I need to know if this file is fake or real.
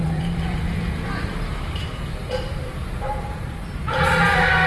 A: fake